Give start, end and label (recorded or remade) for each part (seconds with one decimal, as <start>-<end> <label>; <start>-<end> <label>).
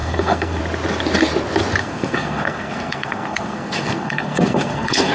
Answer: 0.0-0.6 remade; 0.6-1.8 recorded; 1.8-5.1 remade